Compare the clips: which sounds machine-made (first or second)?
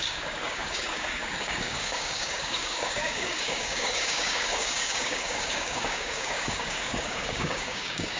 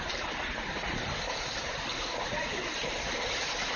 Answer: first